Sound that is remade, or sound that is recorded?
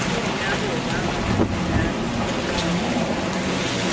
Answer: recorded